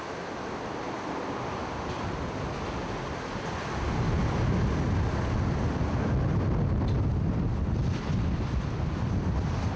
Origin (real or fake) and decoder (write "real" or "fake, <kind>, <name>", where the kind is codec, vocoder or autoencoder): real